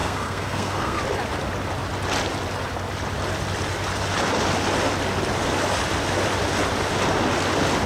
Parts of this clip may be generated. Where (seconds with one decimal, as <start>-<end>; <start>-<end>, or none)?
0.0-1.0